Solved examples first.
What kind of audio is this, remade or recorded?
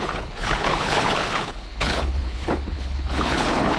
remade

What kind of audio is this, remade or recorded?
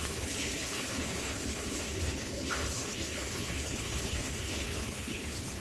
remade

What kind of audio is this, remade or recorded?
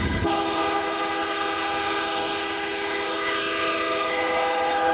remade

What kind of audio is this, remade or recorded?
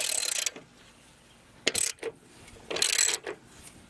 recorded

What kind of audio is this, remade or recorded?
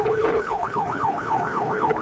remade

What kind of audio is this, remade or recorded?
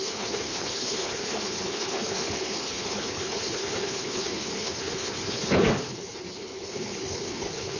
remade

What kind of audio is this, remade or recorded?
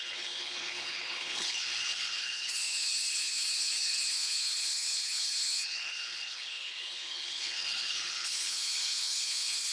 remade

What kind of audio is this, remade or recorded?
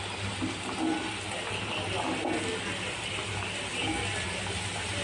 recorded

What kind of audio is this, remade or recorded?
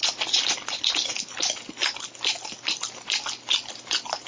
recorded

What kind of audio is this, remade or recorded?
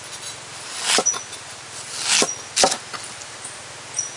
recorded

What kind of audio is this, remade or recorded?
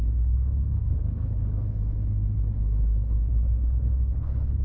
remade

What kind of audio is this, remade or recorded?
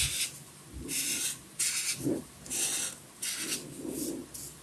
recorded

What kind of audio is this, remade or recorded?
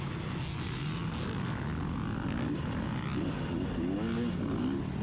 recorded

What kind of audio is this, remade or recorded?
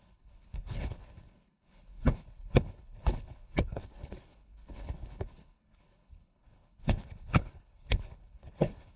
remade